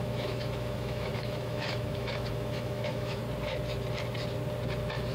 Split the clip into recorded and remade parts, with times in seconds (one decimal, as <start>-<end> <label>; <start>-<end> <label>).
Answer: 0.0-3.2 remade; 3.2-5.1 recorded